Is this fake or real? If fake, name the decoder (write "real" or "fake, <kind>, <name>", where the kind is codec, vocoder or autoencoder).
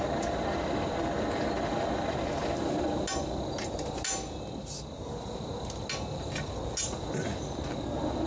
real